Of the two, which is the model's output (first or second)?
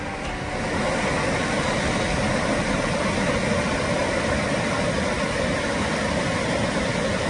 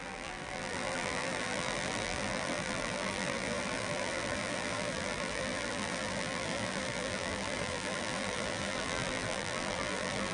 second